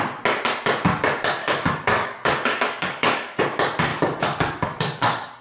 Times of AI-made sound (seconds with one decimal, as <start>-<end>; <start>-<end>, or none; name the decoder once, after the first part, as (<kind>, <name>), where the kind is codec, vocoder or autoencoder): 1.4-3.4 (codec, DAC); 3.9-5.4